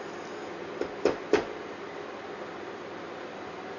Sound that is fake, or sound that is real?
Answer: real